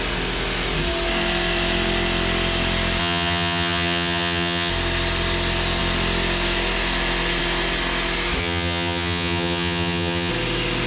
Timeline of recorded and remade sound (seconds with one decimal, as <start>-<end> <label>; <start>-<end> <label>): 0.0-3.0 recorded; 3.0-4.7 remade; 4.7-8.4 recorded; 8.4-10.3 remade; 10.3-10.9 recorded